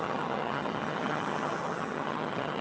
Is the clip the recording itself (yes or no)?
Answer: no